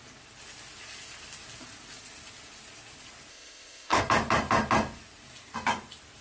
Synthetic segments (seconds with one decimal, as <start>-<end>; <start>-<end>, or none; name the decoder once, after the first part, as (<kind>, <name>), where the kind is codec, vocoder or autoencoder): 3.3-4.0 (codec, ZipCodec)

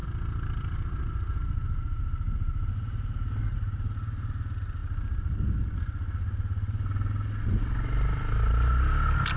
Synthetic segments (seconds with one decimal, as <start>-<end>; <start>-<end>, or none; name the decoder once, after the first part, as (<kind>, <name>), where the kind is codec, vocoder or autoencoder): none

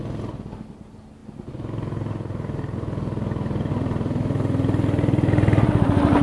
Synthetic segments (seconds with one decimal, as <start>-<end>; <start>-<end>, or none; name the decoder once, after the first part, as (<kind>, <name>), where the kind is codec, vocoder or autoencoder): none

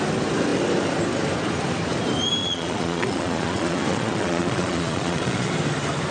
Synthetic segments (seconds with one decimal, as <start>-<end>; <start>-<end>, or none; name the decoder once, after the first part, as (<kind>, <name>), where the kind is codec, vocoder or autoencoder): 2.4-5.5 (vocoder, Vocos)